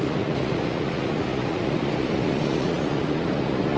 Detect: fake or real fake